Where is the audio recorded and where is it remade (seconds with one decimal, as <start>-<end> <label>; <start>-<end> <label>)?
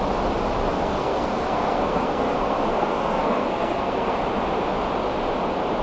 0.0-0.7 recorded; 0.7-4.2 remade; 4.2-5.8 recorded